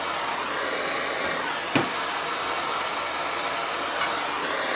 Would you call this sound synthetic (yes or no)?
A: no